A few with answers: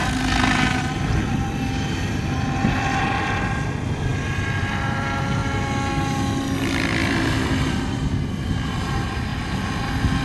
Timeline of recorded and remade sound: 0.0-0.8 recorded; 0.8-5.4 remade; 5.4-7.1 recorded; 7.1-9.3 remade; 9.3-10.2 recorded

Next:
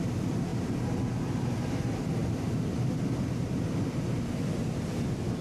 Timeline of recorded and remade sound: 0.0-0.5 recorded; 0.5-1.1 remade; 1.1-2.2 recorded; 2.2-3.8 remade; 3.8-5.4 recorded

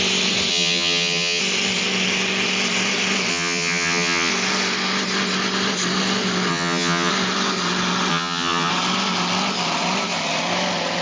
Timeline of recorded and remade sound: 0.0-0.5 recorded; 0.5-1.4 remade; 1.4-3.3 recorded; 3.3-4.3 remade; 4.3-6.5 recorded; 6.5-7.1 remade; 7.1-8.1 recorded; 8.1-8.7 remade; 8.7-11.0 recorded